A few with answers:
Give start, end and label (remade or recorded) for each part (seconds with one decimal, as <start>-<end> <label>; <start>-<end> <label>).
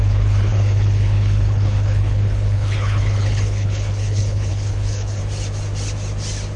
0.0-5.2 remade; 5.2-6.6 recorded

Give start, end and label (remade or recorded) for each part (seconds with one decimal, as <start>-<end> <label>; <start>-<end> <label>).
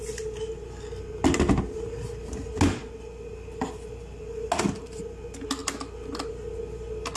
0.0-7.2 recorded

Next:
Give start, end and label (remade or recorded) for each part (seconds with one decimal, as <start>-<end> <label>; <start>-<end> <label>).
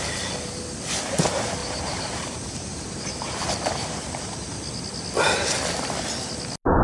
0.0-1.6 recorded; 1.6-4.1 remade; 4.1-6.8 recorded